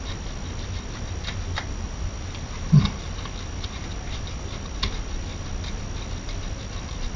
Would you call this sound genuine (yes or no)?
yes